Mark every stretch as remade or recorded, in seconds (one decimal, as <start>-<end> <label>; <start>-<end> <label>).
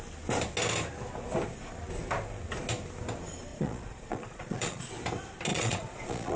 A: 0.0-3.5 recorded; 3.5-4.9 remade; 4.9-5.5 recorded; 5.5-6.4 remade